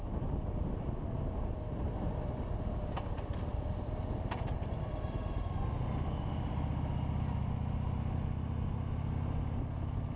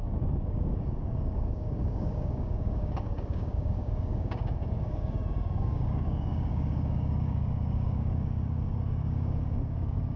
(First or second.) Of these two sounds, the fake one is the second